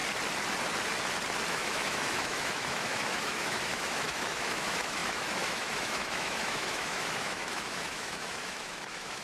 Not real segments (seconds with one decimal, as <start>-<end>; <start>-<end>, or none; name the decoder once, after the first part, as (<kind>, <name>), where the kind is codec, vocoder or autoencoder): 1.5-9.2 (autoencoder, DAC-VAE)